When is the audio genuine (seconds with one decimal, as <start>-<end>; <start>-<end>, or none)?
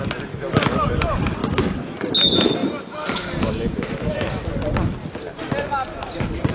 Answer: 0.0-6.5